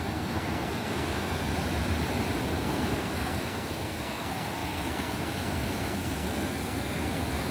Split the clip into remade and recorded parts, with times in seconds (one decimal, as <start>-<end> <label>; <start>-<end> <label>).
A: 0.0-1.5 remade; 1.5-2.5 recorded; 2.5-7.5 remade